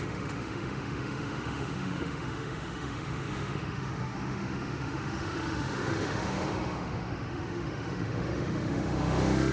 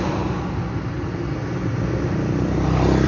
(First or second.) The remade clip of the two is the first